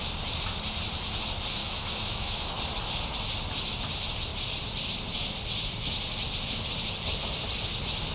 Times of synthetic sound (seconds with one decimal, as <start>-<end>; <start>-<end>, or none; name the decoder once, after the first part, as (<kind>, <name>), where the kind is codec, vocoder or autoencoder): 1.6-2.6 (autoencoder, DAC-VAE)